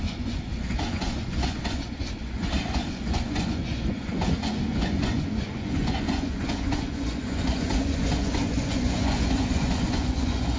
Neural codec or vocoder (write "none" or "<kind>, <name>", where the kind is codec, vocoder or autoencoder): vocoder, Vocos